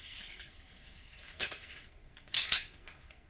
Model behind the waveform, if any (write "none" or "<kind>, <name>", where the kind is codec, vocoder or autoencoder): codec, SNAC